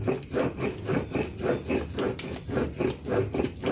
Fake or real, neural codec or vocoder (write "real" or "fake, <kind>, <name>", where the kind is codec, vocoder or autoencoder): real